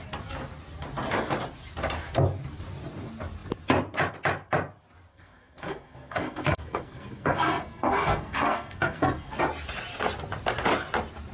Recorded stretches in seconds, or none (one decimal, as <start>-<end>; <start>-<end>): 0.0-5.1; 9.4-11.3